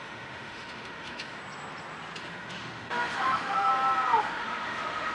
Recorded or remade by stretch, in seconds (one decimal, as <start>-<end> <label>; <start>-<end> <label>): 0.0-1.4 remade; 1.4-2.2 recorded; 2.2-3.7 remade; 3.7-4.2 recorded; 4.2-5.1 remade